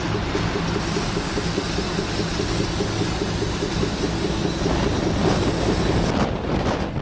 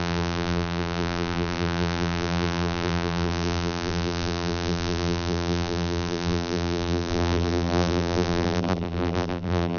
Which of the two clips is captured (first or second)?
first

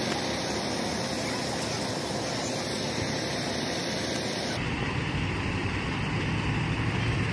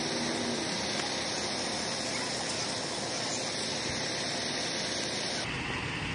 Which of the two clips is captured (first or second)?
second